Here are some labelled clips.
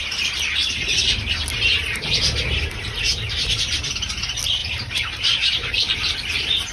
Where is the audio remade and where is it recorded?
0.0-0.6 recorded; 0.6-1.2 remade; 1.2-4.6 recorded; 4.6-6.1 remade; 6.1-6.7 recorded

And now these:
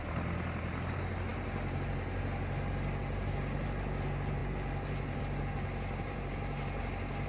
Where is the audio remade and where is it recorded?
0.0-7.3 recorded